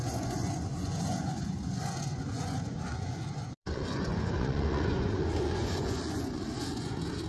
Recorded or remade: remade